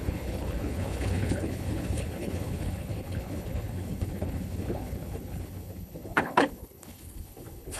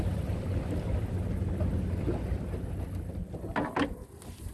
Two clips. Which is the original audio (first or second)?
second